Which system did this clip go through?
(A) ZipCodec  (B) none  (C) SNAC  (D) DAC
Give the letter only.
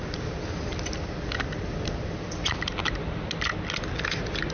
B